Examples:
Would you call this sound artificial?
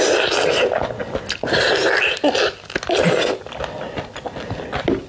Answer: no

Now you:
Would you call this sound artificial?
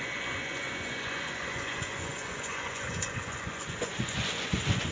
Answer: yes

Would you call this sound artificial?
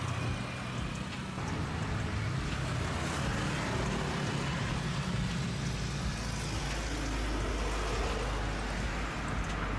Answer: no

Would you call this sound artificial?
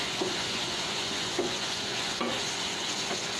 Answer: yes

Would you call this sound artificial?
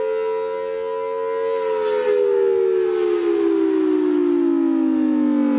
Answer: no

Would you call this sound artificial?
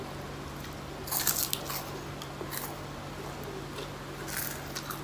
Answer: no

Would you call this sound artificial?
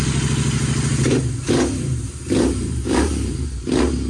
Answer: no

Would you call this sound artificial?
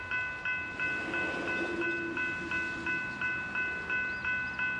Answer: no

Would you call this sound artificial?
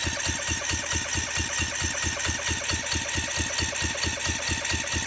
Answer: no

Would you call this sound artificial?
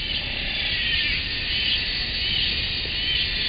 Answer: no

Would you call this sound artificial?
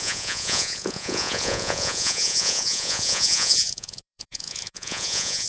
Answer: yes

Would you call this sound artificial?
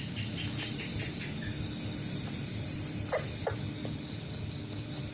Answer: no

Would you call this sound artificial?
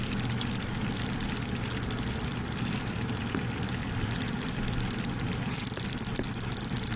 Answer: no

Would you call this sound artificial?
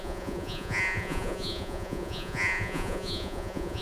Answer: yes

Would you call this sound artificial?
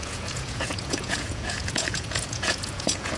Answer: yes